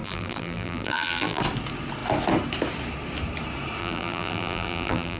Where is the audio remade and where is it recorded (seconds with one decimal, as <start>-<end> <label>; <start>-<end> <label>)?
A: 0.0-1.4 remade; 1.4-3.8 recorded; 3.8-5.2 remade